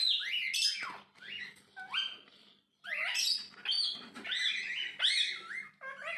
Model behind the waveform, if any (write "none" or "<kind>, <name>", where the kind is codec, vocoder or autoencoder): none